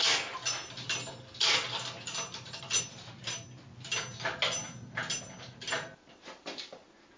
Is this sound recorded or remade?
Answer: recorded